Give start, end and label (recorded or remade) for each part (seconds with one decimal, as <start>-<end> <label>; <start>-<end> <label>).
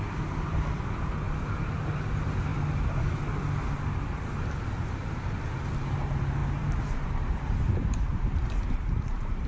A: 0.0-6.4 recorded; 6.4-9.5 remade